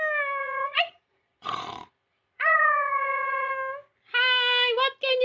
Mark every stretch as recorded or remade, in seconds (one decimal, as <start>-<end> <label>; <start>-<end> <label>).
0.0-0.4 recorded; 0.4-3.5 remade; 3.5-5.2 recorded